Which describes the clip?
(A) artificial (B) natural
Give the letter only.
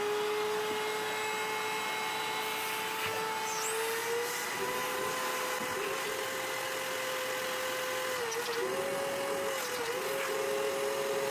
B